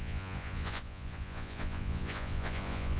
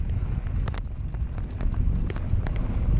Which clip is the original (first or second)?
second